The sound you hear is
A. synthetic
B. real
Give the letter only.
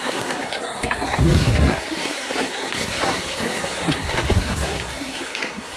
A